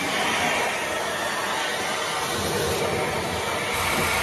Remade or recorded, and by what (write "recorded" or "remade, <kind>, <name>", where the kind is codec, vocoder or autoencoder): recorded